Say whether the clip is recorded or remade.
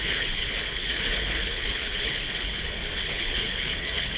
remade